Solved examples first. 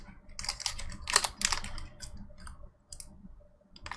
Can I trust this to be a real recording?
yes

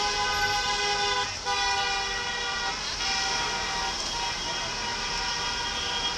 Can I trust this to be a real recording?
yes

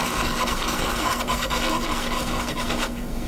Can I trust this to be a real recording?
no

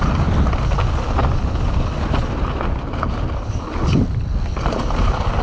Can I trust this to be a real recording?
yes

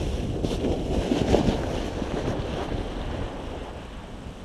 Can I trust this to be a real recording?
yes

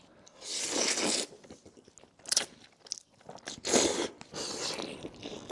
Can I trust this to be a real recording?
yes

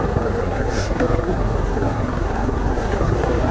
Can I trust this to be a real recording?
no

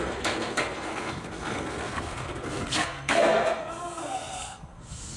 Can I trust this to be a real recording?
no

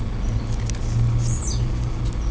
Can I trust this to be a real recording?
yes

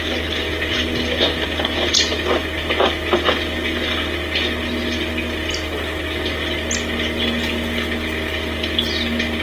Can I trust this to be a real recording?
yes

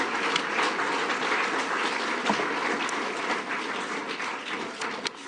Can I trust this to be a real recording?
yes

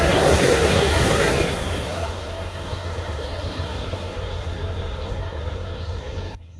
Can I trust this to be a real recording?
no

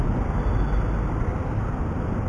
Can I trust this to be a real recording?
yes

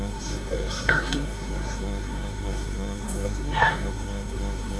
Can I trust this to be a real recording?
no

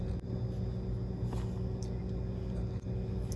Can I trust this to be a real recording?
yes